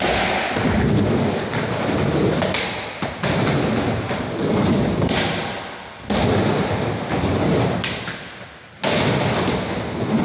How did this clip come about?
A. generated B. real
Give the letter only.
B